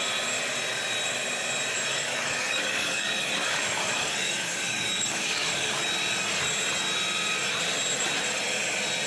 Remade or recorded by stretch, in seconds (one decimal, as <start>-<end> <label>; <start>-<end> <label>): 0.0-1.9 recorded; 1.9-5.7 remade; 5.7-9.1 recorded